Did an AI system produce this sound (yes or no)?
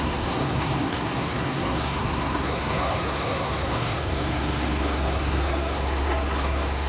yes